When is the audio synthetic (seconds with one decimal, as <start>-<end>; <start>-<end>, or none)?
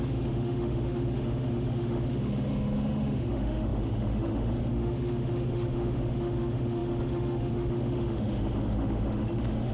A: 0.0-9.7